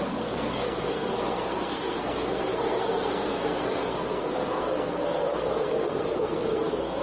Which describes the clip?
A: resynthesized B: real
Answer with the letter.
A